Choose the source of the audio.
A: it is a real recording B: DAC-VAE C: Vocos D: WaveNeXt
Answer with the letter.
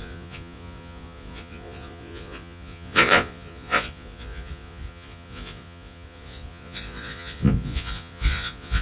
C